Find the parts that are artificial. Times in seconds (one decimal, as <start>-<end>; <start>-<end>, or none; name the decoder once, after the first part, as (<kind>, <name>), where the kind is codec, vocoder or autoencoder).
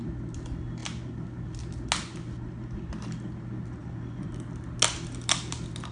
3.8-4.3 (vocoder, Vocos)